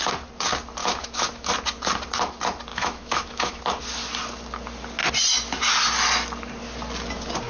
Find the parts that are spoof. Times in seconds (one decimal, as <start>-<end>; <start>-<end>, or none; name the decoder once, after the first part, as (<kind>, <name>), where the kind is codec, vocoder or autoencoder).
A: 0.8-1.5 (autoencoder, DAC-VAE); 2.7-3.6